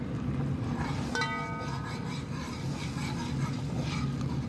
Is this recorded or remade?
recorded